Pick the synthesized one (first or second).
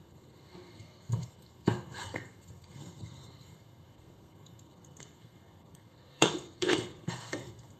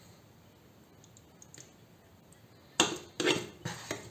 first